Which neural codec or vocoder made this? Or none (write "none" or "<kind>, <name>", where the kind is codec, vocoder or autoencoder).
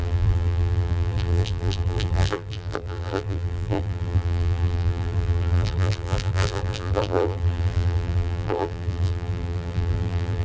vocoder, BigVGAN v2